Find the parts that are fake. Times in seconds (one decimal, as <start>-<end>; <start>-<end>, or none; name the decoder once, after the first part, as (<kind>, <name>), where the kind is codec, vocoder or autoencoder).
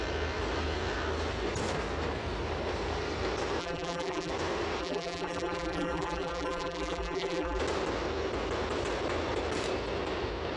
3.6-4.3 (vocoder, BigVGAN v2); 4.8-7.6